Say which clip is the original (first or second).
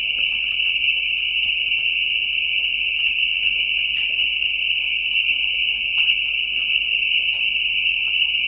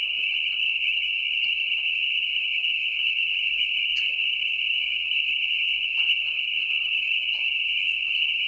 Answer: first